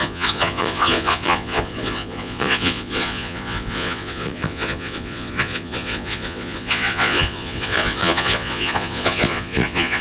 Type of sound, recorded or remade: remade